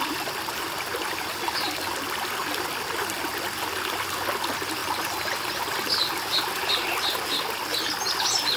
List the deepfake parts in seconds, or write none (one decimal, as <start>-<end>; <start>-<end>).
none